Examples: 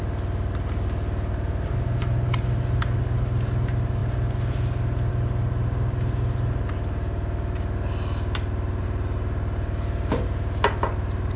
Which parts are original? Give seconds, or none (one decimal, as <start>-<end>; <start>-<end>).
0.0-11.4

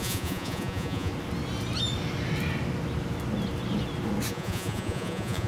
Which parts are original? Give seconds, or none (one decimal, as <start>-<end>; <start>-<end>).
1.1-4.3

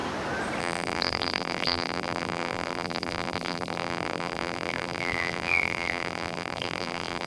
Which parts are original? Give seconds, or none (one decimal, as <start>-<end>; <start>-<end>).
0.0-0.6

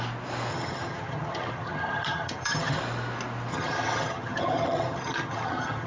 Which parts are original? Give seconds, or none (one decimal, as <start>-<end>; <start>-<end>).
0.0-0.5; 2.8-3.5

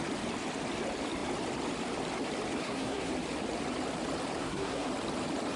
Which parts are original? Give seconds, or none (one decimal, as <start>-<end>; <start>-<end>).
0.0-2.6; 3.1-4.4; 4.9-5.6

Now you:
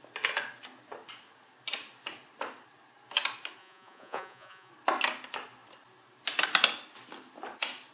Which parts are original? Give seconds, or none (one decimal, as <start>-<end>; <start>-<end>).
0.0-3.6; 4.7-7.9

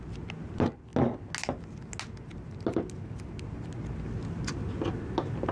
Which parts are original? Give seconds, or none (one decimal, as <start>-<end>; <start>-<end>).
0.0-5.5